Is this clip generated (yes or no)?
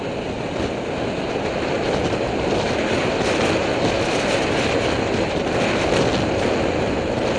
no